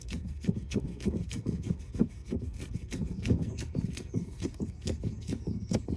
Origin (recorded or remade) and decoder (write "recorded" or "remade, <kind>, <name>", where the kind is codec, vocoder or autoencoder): remade, codec, SNAC